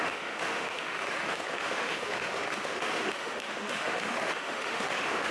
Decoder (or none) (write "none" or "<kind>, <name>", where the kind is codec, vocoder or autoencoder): autoencoder, DAC-VAE